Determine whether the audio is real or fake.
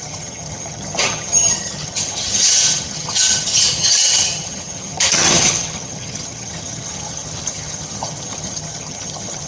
fake